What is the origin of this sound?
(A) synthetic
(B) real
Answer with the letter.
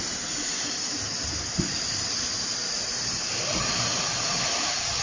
B